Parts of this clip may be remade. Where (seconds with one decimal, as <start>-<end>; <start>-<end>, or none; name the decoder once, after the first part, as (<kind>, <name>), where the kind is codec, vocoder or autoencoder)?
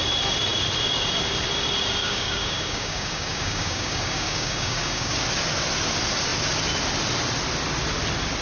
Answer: 2.0-5.1 (codec, DAC)